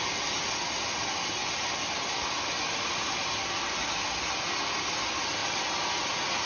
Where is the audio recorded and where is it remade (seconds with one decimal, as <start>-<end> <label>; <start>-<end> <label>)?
0.0-6.5 recorded